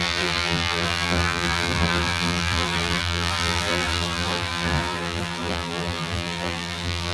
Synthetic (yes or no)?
yes